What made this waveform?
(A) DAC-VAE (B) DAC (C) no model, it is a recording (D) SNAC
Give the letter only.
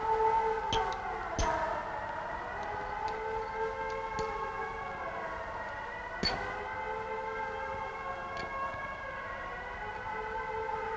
C